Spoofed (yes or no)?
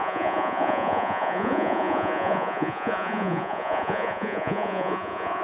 yes